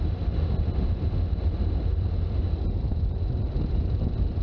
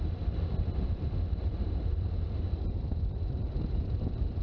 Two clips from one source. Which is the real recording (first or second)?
first